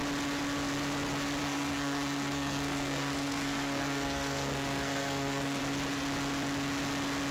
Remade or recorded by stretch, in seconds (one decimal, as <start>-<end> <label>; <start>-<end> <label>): 0.0-1.4 recorded; 1.4-5.6 remade; 5.6-7.3 recorded